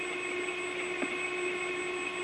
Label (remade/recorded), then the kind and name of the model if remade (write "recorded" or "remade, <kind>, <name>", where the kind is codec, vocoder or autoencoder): recorded